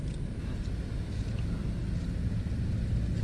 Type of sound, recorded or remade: recorded